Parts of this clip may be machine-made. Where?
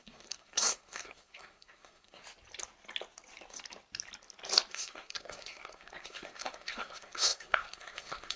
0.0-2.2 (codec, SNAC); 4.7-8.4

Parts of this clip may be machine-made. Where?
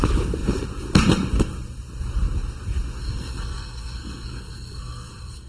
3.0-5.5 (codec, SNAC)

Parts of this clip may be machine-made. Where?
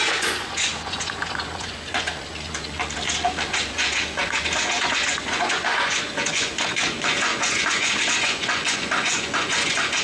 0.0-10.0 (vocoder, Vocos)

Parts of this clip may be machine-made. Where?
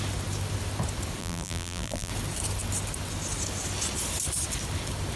1.2-2.1 (vocoder, BigVGAN v2)